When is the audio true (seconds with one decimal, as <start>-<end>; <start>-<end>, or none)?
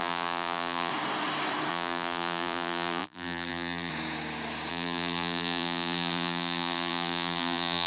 0.9-1.7; 3.9-4.7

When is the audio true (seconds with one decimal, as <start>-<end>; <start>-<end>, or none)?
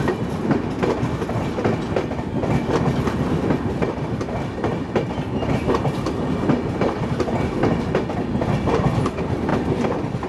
0.0-10.3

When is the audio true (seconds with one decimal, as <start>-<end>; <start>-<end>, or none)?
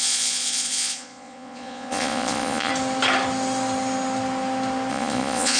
2.7-4.9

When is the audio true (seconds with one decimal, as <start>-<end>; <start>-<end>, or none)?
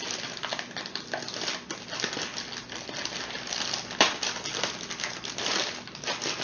0.0-6.4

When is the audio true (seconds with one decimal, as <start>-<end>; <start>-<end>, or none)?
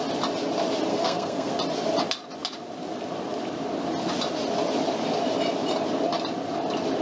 0.0-0.9; 1.5-7.0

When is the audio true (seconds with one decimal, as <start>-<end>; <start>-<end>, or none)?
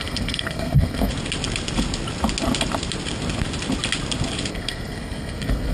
1.1-4.5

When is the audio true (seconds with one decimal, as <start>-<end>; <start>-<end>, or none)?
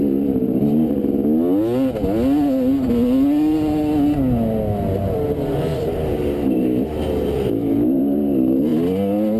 1.0-5.0; 8.7-9.4